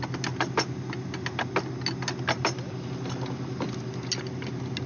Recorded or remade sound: recorded